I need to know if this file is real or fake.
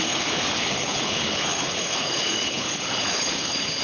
fake